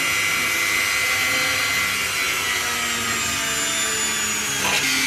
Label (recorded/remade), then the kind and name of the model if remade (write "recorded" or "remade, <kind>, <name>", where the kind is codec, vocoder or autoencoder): recorded